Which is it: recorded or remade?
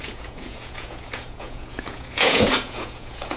remade